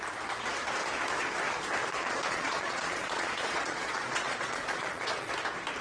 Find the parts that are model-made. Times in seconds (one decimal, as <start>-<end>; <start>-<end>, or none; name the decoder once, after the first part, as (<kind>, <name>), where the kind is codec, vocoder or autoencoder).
1.8-5.3 (vocoder, Vocos)